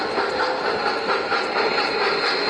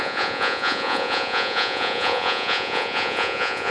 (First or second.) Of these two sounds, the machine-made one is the second